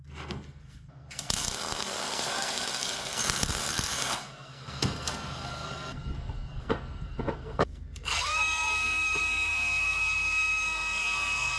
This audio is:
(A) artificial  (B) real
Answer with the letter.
A